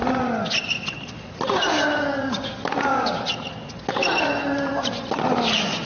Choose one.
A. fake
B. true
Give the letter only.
B